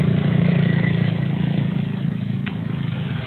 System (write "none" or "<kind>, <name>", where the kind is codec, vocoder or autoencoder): codec, DAC